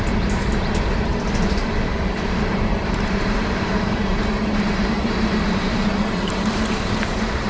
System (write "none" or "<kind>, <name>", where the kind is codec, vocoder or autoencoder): vocoder, BigVGAN v2